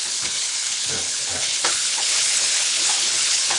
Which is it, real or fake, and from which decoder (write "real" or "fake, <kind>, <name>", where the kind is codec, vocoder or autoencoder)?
fake, codec, HILCodec